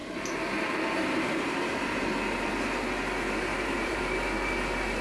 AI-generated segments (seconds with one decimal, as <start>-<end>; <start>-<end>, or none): 0.0-2.5; 3.5-4.0